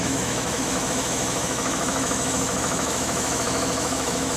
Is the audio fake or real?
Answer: fake